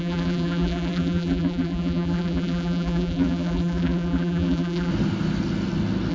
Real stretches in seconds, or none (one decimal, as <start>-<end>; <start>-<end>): 4.9-6.1